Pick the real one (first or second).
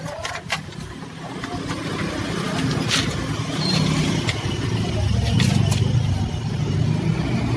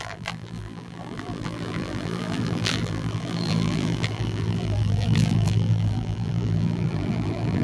first